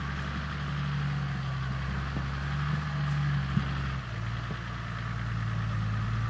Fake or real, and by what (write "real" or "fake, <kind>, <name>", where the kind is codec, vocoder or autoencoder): real